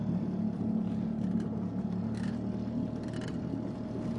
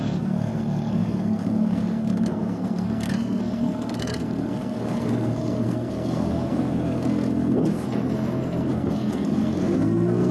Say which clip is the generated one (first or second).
second